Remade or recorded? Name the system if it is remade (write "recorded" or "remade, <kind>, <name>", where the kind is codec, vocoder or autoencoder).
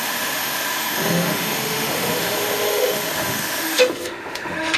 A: remade, autoencoder, DAC-VAE